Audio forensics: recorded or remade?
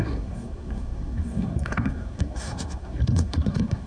remade